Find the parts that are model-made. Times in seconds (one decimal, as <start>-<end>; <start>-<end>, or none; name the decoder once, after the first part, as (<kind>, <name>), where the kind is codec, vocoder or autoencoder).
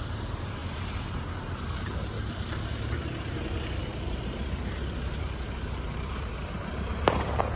0.0-7.6 (vocoder, BigVGAN v2)